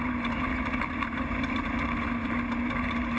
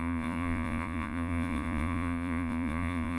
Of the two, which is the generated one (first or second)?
second